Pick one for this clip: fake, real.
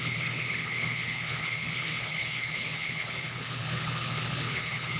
fake